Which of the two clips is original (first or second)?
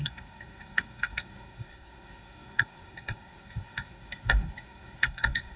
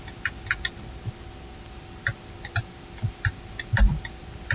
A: second